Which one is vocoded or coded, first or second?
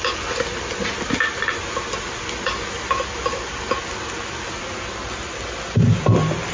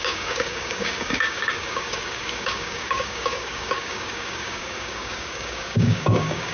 second